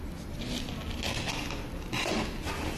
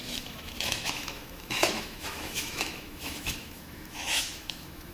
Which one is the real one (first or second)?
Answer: first